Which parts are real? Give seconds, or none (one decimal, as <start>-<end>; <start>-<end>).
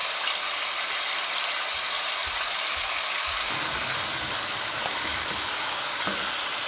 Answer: 0.0-2.2; 6.2-6.7